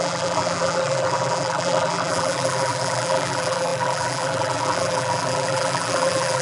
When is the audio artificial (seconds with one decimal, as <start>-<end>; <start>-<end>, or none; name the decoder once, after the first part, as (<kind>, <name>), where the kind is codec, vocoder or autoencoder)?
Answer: 0.0-6.4 (vocoder, BigVGAN v2)